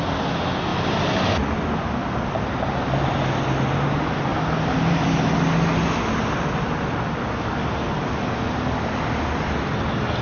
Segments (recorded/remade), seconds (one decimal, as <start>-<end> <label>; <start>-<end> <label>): 0.0-10.2 recorded